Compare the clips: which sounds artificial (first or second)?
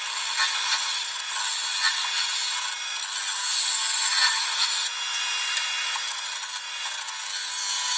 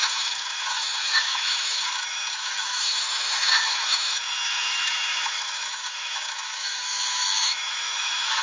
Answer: second